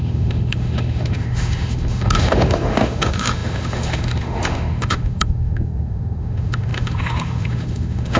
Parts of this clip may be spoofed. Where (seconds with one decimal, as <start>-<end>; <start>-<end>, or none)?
0.0-8.2